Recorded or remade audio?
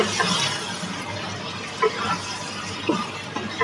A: recorded